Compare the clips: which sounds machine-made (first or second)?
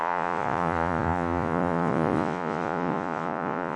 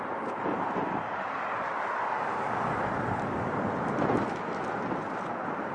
first